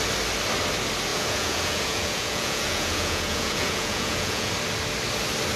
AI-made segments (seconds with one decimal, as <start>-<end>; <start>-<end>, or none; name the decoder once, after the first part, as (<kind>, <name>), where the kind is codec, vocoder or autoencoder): 1.1-4.5 (vocoder, Vocos)